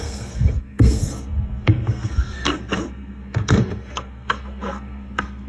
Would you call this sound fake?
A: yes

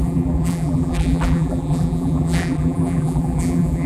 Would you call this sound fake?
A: yes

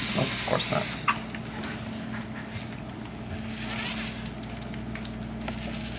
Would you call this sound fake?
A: no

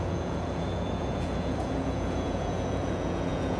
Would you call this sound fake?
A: yes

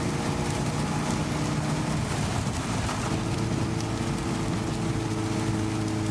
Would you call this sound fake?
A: no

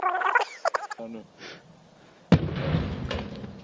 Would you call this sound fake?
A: no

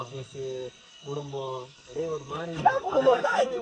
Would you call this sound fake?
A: yes